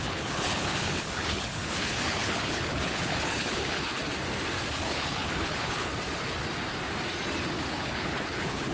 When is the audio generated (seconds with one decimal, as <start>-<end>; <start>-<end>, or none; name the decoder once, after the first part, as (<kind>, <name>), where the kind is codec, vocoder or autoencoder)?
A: 0.0-4.0 (codec, HILCodec); 4.7-5.9; 7.7-8.7